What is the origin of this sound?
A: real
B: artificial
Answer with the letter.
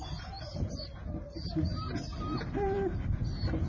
A